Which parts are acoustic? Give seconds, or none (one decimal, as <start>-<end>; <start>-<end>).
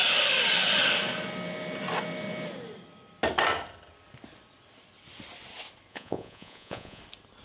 0.0-5.9; 7.0-7.4